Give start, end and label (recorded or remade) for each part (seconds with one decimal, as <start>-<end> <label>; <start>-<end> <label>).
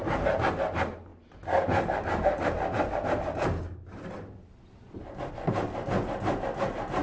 0.0-7.0 recorded